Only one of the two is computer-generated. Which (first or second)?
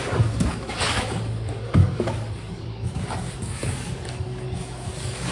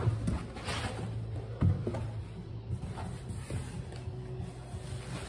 first